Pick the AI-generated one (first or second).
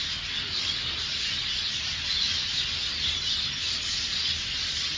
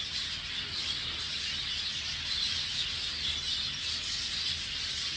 first